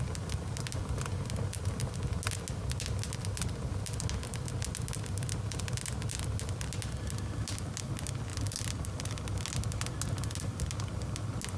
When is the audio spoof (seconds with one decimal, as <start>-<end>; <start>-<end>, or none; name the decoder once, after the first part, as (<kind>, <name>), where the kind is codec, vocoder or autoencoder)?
none